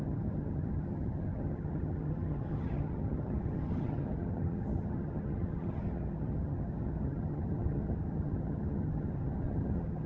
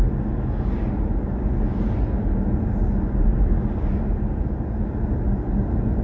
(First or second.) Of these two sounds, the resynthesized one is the first